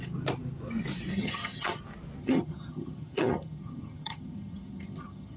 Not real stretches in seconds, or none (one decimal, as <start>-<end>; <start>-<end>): 1.1-1.8; 2.2-5.4